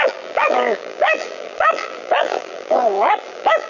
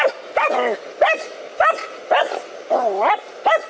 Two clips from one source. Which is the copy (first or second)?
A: first